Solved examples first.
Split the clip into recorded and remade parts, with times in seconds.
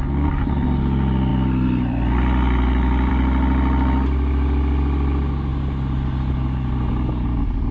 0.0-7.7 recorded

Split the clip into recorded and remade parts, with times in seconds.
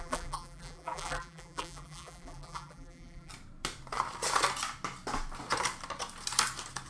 0.0-3.3 remade; 3.3-6.9 recorded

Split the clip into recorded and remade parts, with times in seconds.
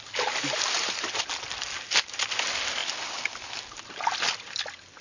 0.0-5.0 recorded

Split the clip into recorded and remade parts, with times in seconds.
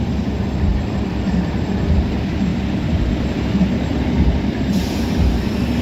0.0-0.7 recorded; 0.7-1.7 remade; 1.7-2.5 recorded; 2.5-3.3 remade; 3.3-3.9 recorded; 3.9-5.0 remade; 5.0-5.8 recorded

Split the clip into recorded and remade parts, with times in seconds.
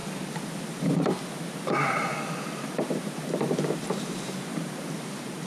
0.0-2.1 recorded; 2.1-5.5 remade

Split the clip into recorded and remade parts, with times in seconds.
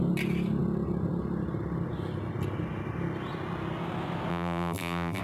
0.0-4.3 recorded; 4.3-5.2 remade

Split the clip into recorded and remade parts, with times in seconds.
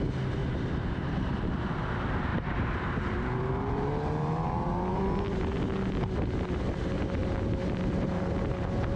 0.0-0.4 recorded; 0.4-1.4 remade; 1.4-2.3 recorded; 2.3-5.0 remade; 5.0-7.2 recorded; 7.2-8.2 remade; 8.2-9.0 recorded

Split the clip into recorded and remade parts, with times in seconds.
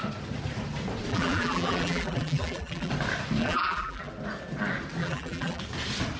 0.0-1.1 recorded; 1.1-2.9 remade; 2.9-3.4 recorded; 3.4-4.1 remade; 4.1-5.0 recorded; 5.0-5.6 remade; 5.6-6.2 recorded